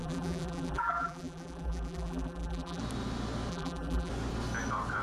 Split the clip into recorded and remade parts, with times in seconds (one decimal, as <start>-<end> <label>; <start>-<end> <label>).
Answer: 0.0-2.8 remade; 2.8-3.5 recorded; 3.5-4.1 remade; 4.1-5.0 recorded